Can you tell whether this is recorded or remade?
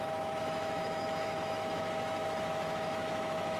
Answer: remade